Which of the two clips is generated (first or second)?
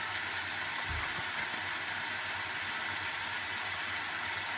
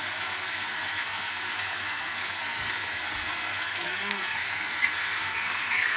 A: second